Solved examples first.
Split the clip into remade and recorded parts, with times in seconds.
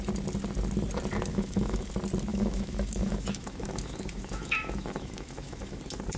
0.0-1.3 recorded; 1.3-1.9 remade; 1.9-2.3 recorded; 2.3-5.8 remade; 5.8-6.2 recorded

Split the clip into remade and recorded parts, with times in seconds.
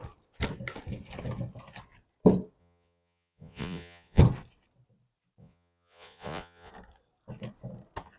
0.0-2.6 recorded; 2.6-4.2 remade; 4.2-5.4 recorded; 5.4-6.7 remade; 6.7-8.2 recorded